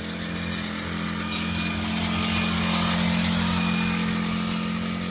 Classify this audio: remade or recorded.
recorded